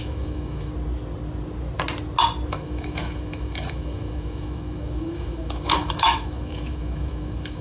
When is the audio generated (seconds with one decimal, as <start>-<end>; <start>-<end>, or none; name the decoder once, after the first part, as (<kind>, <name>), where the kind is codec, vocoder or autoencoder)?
0.0-0.7 (autoencoder, DAC-VAE); 2.5-7.6